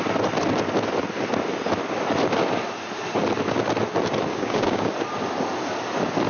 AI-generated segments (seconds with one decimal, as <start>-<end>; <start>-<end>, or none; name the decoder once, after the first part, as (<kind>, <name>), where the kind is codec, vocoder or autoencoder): 4.3-4.9 (codec, DAC)